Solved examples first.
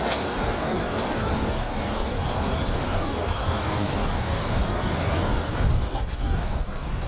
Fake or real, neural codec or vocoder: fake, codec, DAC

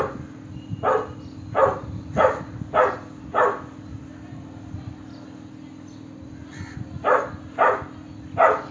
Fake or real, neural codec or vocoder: real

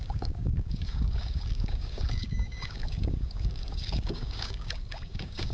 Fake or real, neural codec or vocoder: fake, codec, DAC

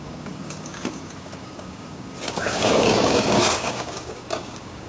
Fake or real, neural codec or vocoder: fake, codec, DAC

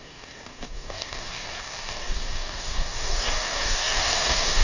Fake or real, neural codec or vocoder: fake, codec, DAC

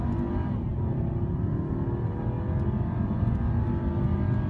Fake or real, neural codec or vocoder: real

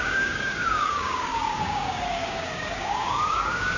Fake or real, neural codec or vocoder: fake, codec, DAC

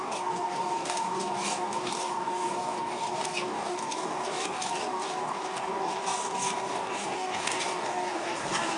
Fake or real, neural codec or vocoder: fake, codec, DAC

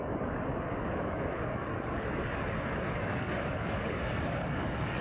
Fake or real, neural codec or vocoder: fake, codec, DAC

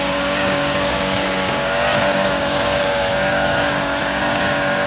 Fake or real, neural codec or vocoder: fake, codec, DAC